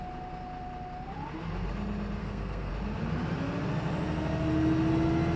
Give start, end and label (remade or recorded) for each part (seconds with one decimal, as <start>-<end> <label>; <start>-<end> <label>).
0.0-2.2 recorded; 2.2-2.7 remade; 2.7-5.4 recorded